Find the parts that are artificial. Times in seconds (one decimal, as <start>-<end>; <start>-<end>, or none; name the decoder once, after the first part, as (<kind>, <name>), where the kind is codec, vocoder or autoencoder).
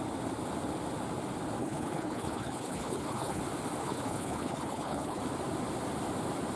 1.6-3.4 (codec, HILCodec); 3.8-5.2